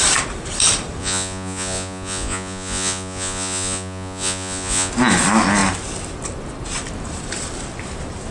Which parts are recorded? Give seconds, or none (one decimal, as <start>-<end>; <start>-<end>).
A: 0.0-1.0; 4.9-8.3